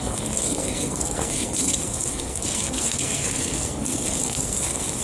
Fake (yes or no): yes